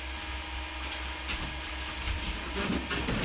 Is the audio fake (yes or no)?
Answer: no